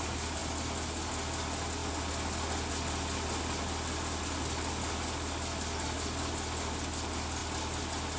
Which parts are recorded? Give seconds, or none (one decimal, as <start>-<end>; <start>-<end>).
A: 0.0-8.2